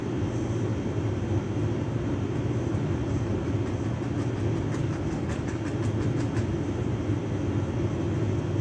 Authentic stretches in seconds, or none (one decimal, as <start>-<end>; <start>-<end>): 0.0-4.8; 5.6-8.6